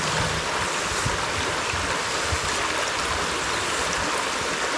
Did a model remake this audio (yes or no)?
no